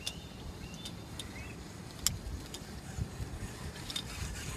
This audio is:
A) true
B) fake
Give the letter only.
A